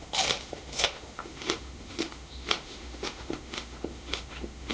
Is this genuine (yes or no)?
no